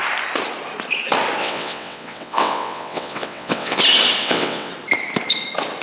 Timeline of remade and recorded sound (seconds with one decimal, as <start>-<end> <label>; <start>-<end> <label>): 0.0-1.4 recorded; 1.4-3.8 remade; 3.8-4.2 recorded; 4.2-4.7 remade; 4.7-5.8 recorded